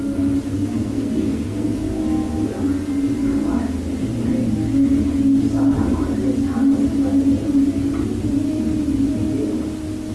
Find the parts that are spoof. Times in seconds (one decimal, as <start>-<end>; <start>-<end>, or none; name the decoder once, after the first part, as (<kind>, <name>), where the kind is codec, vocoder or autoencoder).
0.5-2.0 (codec, SNAC)